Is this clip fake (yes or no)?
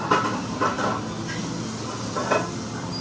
no